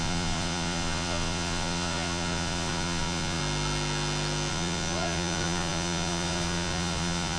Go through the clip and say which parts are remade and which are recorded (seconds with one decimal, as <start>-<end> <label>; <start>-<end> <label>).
0.0-3.4 remade; 3.4-4.5 recorded; 4.5-7.4 remade